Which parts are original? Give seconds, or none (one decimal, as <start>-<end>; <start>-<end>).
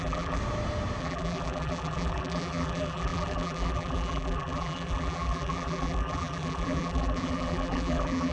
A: 0.4-1.0